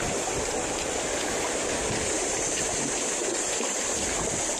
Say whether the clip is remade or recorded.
recorded